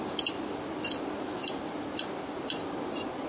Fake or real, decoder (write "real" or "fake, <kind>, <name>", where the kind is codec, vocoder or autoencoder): real